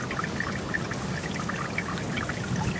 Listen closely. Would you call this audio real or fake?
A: real